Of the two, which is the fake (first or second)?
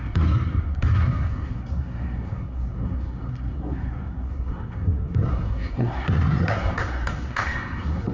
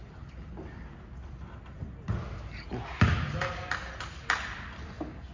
first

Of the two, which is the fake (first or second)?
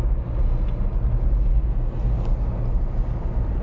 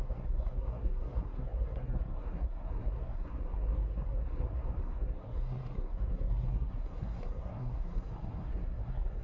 second